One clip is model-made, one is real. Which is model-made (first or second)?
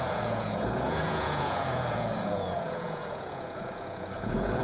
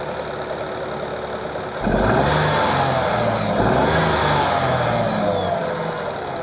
first